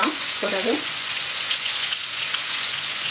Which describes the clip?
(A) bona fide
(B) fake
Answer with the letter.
B